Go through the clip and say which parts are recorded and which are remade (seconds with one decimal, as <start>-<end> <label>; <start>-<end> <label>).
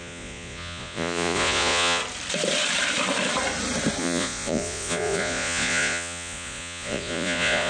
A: 0.0-2.0 remade; 2.0-4.0 recorded; 4.0-7.7 remade